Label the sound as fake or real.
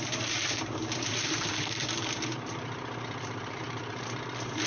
fake